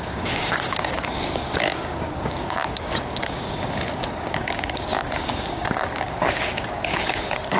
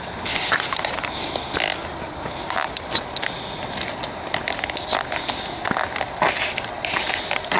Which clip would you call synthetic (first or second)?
first